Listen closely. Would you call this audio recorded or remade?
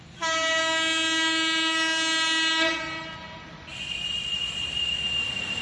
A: recorded